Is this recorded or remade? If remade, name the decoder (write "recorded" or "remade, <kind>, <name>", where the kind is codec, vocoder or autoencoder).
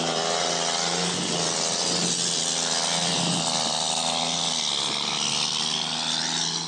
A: recorded